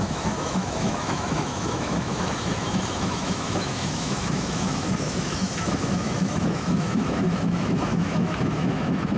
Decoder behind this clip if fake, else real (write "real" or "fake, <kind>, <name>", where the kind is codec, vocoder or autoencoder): fake, autoencoder, DAC-VAE